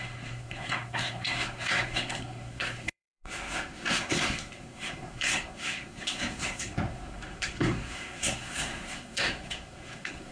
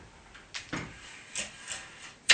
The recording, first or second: second